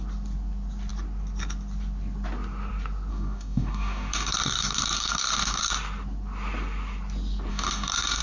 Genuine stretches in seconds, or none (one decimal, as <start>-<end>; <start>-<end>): 0.0-3.1; 5.7-7.5